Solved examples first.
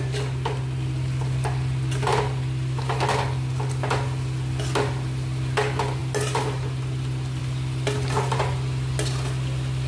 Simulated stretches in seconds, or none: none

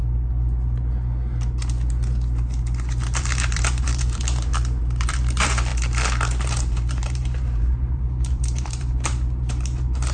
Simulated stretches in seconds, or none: 3.2-5.7 (vocoder, BigVGAN v2); 6.3-10.1

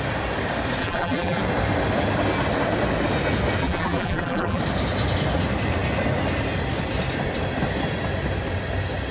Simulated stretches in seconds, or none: 0.8-1.4 (vocoder, BigVGAN v2); 3.6-4.6

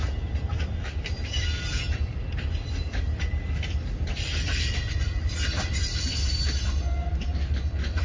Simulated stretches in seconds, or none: 2.1-6.9 (vocoder, BigVGAN v2)

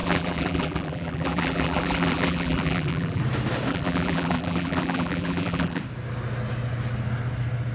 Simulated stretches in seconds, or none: 0.0-3.2 (vocoder, BigVGAN v2); 3.7-5.8